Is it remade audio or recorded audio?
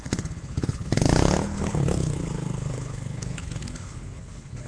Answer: remade